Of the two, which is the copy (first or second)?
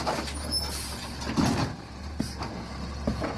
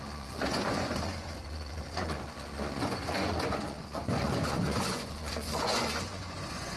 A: second